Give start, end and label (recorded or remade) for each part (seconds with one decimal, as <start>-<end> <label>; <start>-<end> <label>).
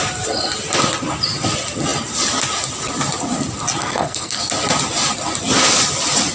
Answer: 0.0-3.8 recorded; 3.8-4.4 remade; 4.4-6.3 recorded